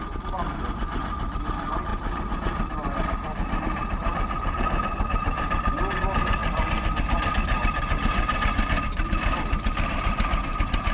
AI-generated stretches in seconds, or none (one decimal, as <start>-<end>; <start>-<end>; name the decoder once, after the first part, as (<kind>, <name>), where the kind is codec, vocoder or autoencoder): none